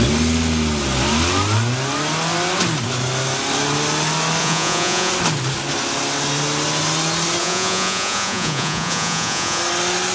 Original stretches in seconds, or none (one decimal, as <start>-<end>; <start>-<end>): 0.0-4.4; 5.1-7.4; 9.6-10.1